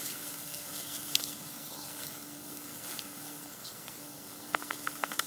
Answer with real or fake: fake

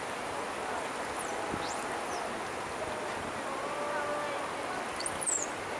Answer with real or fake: real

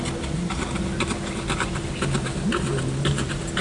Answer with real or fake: real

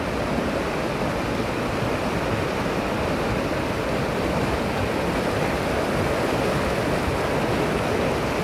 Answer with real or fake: real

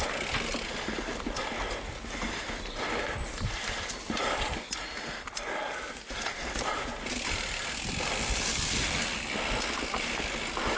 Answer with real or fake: real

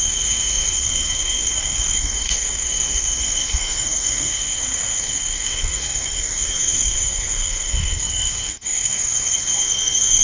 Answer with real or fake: fake